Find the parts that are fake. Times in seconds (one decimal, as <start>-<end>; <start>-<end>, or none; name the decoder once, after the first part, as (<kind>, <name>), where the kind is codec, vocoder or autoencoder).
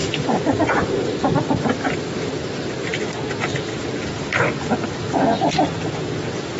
none